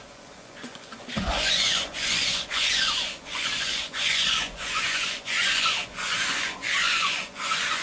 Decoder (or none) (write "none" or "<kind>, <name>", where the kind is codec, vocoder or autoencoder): vocoder, Vocos